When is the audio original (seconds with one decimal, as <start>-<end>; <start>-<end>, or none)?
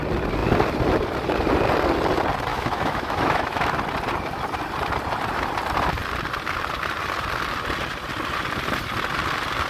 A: 0.0-2.5; 3.8-9.7